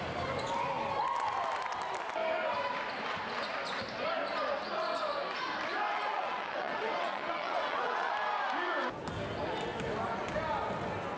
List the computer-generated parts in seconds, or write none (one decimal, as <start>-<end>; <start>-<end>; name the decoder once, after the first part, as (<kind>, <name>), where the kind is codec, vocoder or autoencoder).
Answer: 5.9-8.1 (vocoder, WaveNeXt)